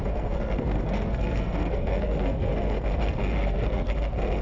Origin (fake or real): fake